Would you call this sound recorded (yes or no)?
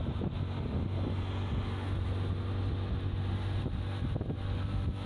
yes